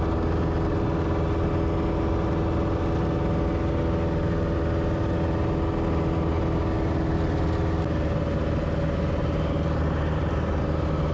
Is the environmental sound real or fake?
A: real